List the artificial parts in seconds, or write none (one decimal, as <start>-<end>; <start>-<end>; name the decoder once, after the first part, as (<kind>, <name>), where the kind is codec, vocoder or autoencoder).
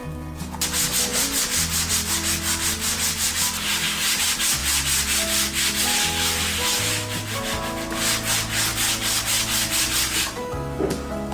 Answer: none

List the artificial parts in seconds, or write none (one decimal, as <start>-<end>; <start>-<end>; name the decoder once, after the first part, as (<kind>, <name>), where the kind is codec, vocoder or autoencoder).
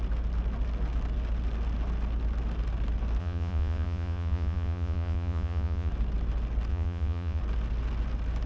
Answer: 3.2-5.9 (vocoder, Vocos); 6.7-7.4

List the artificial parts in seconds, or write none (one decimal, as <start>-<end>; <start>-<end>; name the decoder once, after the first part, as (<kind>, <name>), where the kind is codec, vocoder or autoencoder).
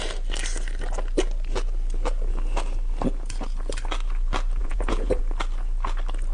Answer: 4.6-5.2 (vocoder, Vocos)